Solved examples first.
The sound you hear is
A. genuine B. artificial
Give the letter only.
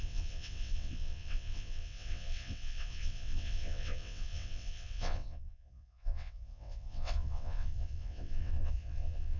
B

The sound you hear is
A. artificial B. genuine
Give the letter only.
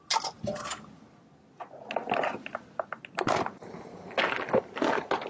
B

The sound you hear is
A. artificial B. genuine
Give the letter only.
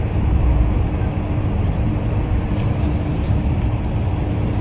B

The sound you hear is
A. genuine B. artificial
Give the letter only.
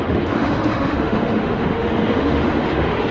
B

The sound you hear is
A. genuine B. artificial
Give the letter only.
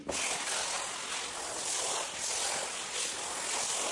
A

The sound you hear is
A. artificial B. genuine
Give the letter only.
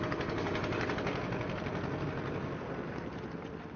B